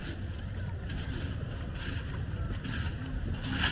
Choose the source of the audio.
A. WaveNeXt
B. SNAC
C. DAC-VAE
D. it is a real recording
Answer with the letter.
D